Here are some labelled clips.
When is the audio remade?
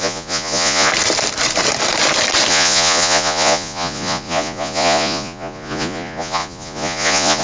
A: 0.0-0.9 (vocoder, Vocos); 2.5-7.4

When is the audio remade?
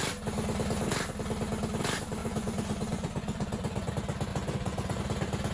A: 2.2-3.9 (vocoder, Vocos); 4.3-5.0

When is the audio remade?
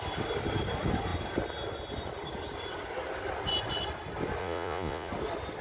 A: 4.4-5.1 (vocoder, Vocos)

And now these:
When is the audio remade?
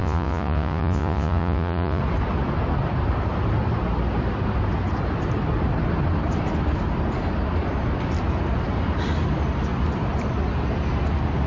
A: 0.0-2.0 (vocoder, Vocos)